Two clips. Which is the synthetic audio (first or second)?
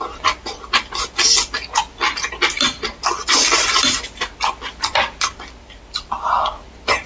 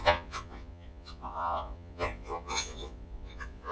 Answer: second